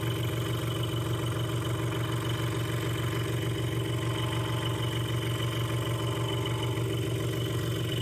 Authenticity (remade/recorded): recorded